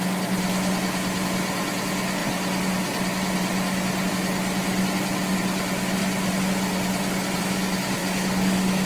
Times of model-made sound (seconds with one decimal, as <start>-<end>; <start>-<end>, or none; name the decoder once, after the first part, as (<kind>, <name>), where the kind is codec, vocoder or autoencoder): 8.0-8.9 (codec, DAC)